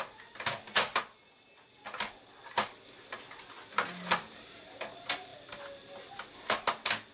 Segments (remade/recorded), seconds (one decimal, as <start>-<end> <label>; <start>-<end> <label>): 0.0-7.1 recorded